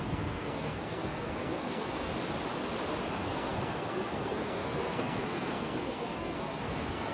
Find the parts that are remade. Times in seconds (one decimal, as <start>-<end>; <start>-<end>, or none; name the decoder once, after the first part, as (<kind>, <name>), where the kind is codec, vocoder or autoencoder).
0.0-2.1 (codec, SNAC); 3.1-7.1